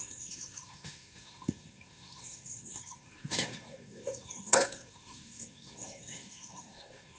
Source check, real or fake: fake